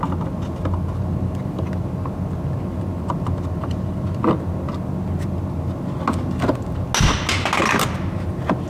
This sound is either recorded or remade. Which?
recorded